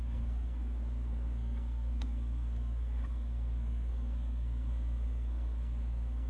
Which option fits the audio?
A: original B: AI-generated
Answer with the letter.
B